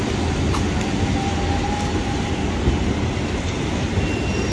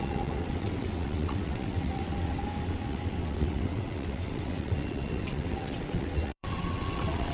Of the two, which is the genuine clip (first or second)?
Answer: first